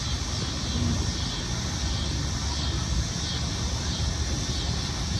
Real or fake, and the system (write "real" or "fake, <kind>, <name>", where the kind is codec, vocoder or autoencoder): real